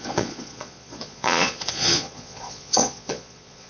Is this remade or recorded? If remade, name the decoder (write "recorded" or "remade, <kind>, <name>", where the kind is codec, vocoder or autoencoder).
remade, vocoder, Vocos